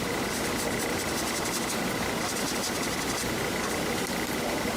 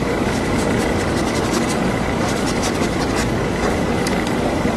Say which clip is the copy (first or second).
second